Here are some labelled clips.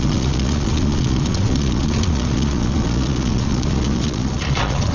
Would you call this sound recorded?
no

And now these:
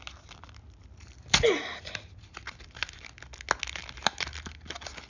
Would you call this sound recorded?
yes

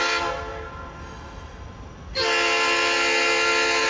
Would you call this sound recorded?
yes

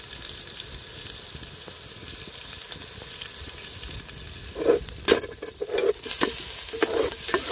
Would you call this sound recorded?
yes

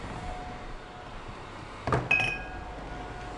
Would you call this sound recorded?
yes